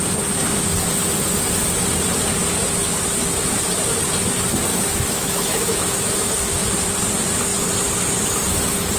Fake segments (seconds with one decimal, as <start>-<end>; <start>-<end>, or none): 4.7-6.5